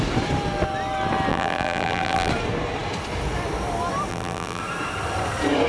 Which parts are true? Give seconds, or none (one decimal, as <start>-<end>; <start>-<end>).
0.0-1.3; 2.3-4.1; 4.6-5.7